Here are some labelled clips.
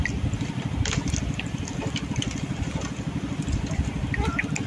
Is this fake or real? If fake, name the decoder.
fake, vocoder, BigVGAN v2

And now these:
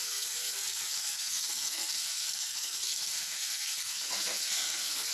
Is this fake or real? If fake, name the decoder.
fake, codec, SNAC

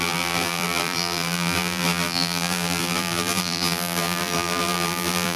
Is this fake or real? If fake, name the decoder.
fake, vocoder, BigVGAN v2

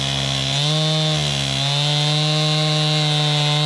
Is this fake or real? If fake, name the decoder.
real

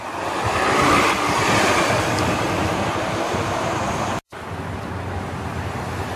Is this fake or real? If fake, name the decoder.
real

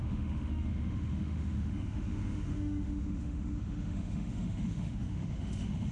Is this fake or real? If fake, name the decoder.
fake, autoencoder, DAC-VAE